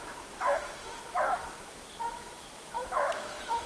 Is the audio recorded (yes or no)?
no